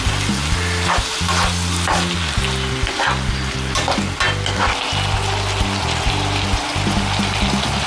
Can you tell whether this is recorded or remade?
recorded